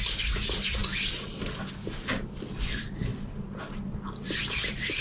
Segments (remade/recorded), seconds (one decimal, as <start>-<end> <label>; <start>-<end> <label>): 0.0-5.0 recorded